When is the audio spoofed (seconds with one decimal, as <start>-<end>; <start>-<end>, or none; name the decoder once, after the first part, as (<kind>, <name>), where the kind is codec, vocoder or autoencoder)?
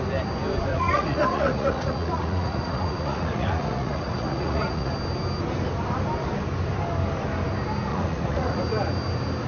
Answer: 0.7-4.9 (vocoder, Vocos); 7.9-8.6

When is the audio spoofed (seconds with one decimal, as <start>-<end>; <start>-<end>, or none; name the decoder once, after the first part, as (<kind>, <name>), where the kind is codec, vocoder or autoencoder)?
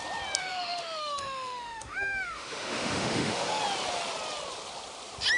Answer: 0.4-3.6 (autoencoder, DAC-VAE)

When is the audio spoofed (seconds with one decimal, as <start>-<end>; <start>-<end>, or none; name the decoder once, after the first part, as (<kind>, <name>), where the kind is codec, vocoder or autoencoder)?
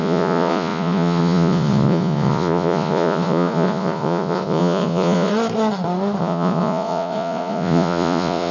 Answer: 0.0-5.3 (vocoder, Vocos); 6.2-8.5